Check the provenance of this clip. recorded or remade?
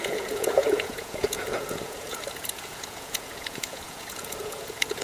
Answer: remade